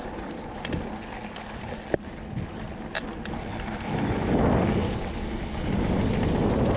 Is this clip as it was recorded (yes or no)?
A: yes